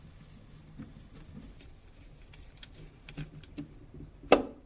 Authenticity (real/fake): real